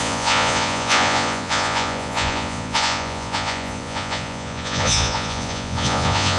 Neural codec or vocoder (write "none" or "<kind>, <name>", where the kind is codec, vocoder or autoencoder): vocoder, Vocos